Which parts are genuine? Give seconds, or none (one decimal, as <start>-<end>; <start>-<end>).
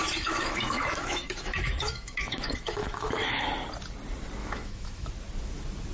3.5-4.4; 5.1-5.9